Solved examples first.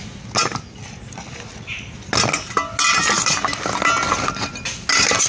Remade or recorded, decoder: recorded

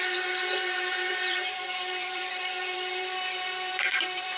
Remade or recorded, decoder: remade, vocoder, BigVGAN v2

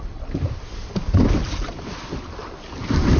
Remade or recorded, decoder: recorded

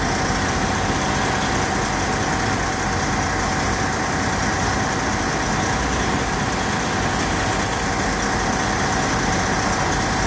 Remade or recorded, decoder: recorded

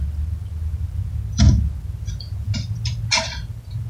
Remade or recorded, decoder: recorded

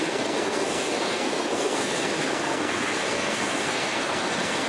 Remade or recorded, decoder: remade, codec, SNAC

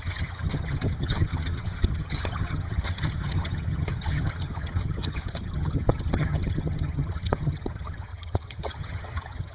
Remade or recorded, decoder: remade, vocoder, HiFi-GAN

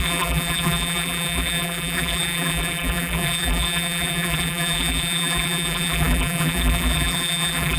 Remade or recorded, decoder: remade, vocoder, BigVGAN v2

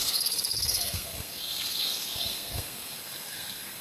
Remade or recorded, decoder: remade, codec, SNAC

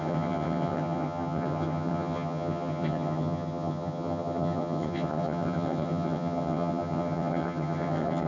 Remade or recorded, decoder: remade, vocoder, HiFi-GAN